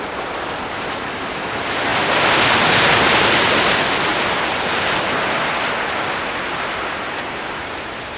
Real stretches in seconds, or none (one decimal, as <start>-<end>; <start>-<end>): 0.0-8.2